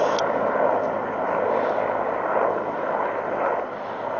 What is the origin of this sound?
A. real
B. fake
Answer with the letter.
A